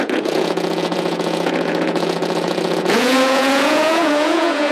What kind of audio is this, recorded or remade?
remade